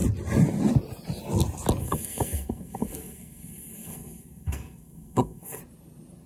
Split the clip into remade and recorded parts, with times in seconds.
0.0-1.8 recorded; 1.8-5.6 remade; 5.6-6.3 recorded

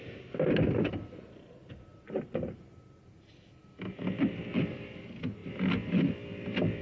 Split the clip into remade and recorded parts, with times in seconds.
0.0-6.8 recorded

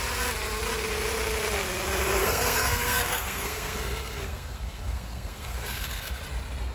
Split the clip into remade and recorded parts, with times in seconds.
0.0-2.2 recorded; 2.2-6.2 remade; 6.2-6.7 recorded